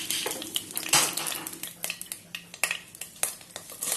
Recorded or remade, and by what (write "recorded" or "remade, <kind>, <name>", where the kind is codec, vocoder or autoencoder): recorded